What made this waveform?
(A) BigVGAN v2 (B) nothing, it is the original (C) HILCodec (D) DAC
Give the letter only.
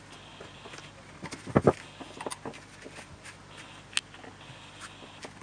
B